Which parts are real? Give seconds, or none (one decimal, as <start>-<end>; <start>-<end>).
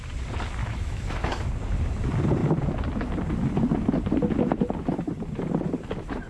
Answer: 0.0-0.6; 1.5-6.3